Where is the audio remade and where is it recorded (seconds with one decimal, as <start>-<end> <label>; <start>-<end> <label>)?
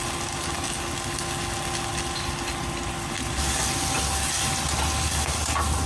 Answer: 0.0-5.9 recorded